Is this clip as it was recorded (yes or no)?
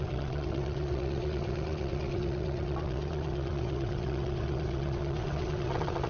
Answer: no